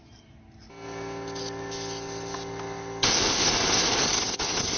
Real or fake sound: real